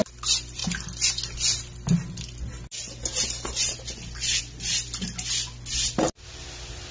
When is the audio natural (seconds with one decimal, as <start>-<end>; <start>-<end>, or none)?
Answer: 0.0-6.9